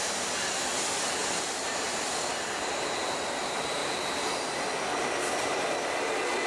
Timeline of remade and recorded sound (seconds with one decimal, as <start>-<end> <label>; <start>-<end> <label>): 0.0-1.2 recorded; 1.2-2.2 remade; 2.2-3.8 recorded; 3.8-4.6 remade; 4.6-5.0 recorded; 5.0-6.1 remade; 6.1-6.5 recorded